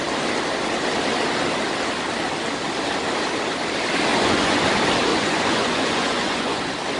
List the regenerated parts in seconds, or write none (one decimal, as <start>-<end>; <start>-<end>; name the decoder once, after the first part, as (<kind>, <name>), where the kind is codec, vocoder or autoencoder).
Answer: 4.1-4.6 (vocoder, Vocos); 5.1-6.6